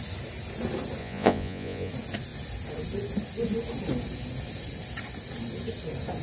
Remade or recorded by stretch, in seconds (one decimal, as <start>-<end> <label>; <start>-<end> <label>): 0.0-1.0 recorded; 1.0-1.9 remade; 1.9-6.2 recorded